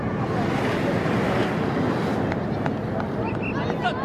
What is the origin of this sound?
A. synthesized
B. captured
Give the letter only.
B